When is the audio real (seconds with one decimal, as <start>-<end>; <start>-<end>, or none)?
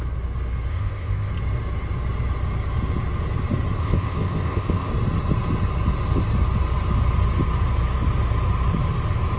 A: 0.0-0.7; 1.3-3.8; 4.9-9.4